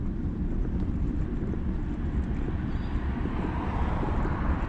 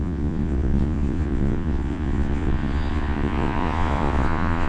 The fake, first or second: second